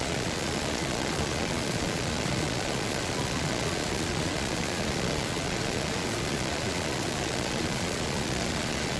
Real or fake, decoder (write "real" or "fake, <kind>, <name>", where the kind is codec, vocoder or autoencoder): fake, vocoder, Vocos